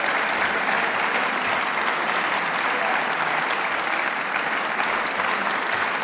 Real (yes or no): yes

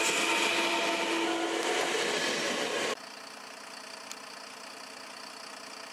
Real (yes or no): yes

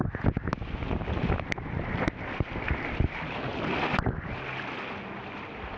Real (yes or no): yes